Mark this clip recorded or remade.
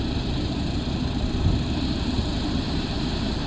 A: remade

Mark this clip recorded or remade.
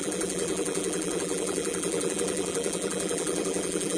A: remade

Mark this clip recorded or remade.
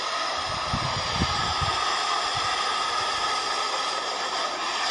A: recorded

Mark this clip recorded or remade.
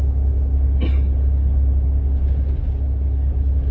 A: recorded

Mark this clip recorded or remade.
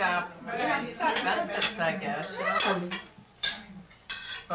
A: remade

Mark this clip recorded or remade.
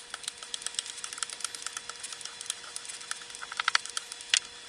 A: recorded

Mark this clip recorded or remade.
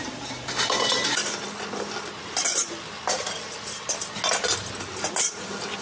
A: recorded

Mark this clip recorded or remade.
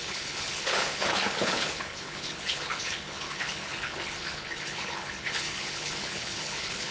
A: remade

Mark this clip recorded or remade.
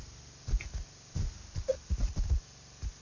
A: recorded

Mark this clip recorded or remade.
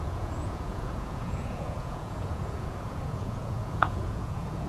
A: remade